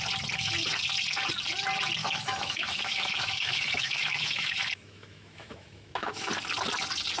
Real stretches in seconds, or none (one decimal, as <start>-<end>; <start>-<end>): 0.0-2.0; 6.3-7.2

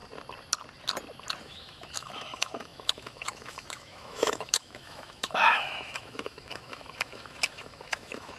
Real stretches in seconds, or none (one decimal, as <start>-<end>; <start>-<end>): 0.0-1.4

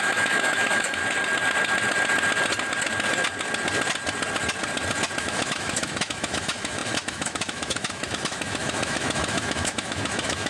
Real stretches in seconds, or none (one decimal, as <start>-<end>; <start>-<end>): 1.0-5.2

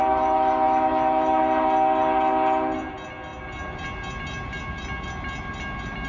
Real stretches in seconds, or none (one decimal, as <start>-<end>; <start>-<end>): 1.4-6.1